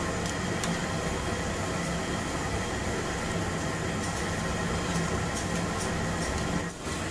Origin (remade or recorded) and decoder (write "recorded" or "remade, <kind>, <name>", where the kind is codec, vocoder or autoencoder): recorded